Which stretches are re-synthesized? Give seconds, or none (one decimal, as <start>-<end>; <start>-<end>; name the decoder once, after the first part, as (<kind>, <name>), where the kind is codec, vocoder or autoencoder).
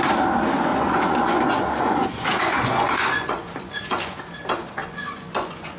0.7-4.2 (vocoder, Vocos); 4.8-5.8